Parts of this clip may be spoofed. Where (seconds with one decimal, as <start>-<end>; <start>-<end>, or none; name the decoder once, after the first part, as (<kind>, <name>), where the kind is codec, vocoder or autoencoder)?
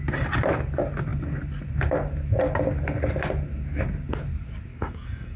4.7-5.4 (codec, DAC)